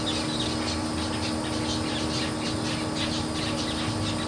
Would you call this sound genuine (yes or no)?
yes